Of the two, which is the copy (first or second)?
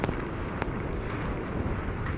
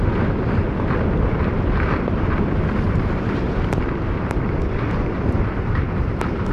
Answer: second